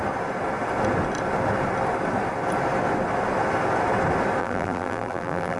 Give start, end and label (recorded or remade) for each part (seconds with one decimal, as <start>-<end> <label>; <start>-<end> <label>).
0.0-4.4 recorded; 4.4-5.6 remade